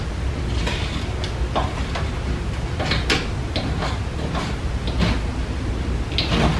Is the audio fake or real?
real